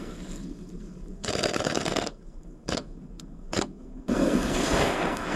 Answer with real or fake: fake